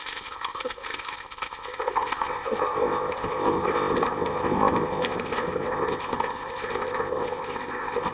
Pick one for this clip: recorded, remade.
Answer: remade